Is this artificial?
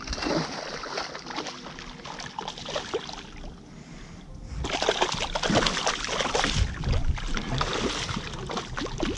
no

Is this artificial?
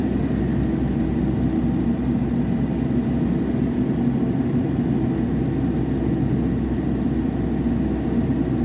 no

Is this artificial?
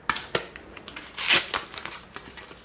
no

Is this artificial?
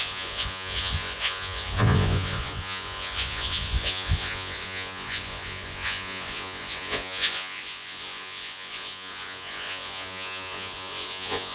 yes